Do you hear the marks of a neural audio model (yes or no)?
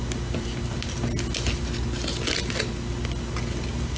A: no